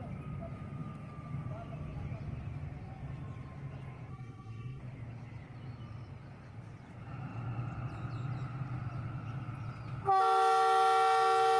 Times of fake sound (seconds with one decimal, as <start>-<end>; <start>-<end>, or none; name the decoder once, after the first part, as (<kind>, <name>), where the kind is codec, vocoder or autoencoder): 4.1-4.8 (codec, SNAC)